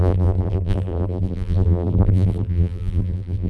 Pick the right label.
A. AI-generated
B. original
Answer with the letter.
A